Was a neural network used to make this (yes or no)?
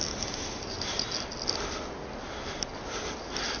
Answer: no